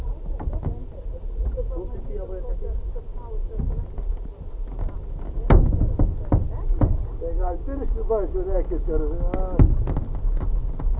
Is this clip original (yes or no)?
yes